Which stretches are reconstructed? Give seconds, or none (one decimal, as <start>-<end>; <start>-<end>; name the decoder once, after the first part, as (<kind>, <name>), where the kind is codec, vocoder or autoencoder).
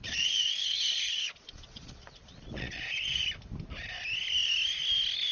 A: 0.0-3.2 (vocoder, Vocos)